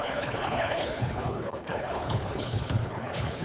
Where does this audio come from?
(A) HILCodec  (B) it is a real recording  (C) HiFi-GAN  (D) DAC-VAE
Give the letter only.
A